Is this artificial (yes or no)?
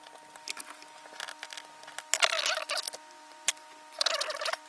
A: no